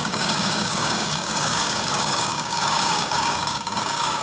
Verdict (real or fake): fake